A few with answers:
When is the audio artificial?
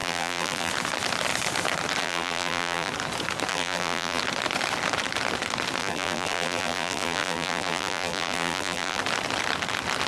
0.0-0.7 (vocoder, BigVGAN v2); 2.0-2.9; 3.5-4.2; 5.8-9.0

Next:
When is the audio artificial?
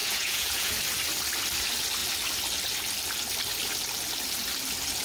0.0-0.7 (vocoder, Vocos)